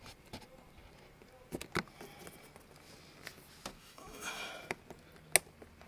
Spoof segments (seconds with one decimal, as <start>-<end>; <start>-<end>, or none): 3.8-4.5